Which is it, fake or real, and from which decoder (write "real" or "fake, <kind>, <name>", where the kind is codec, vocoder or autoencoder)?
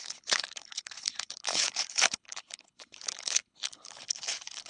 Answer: fake, codec, HILCodec